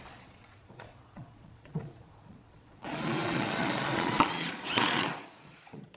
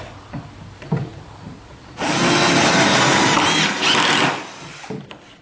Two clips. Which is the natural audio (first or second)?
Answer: second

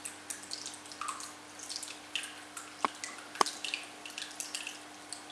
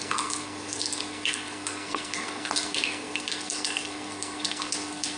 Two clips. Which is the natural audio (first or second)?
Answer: first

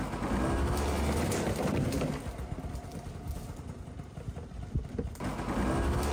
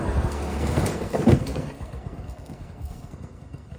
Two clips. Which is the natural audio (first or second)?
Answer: first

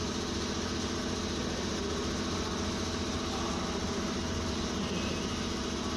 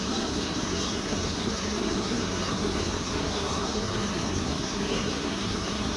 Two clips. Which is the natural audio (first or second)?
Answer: first